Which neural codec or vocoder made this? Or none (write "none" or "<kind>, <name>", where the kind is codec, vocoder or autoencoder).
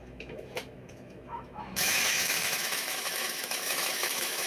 autoencoder, DAC-VAE